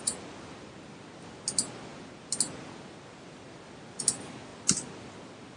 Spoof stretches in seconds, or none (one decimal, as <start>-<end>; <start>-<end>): none